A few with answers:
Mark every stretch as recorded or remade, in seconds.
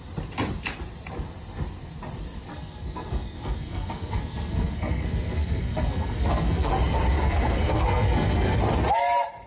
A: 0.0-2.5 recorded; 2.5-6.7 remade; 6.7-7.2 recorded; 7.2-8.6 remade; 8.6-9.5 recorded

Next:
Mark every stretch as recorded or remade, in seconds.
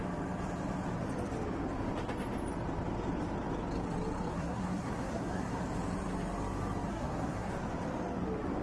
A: 0.0-4.3 recorded; 4.3-5.6 remade; 5.6-6.9 recorded; 6.9-7.5 remade; 7.5-8.6 recorded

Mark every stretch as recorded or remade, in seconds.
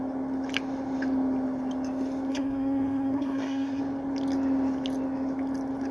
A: 0.0-2.3 recorded; 2.3-3.8 remade; 3.8-5.9 recorded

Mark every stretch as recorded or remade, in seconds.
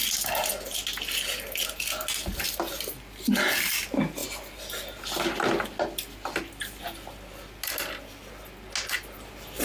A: 0.0-9.6 recorded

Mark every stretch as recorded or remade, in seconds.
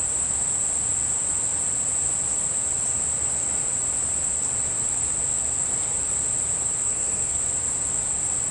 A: 0.0-6.8 recorded; 6.8-7.4 remade; 7.4-8.5 recorded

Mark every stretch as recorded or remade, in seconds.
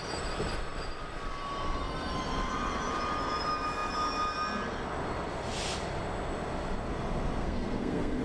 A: 0.0-7.4 recorded; 7.4-8.2 remade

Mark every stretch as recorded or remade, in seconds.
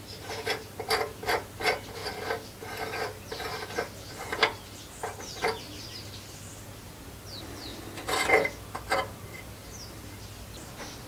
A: 0.0-11.1 recorded